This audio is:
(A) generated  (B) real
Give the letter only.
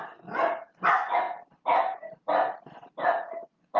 B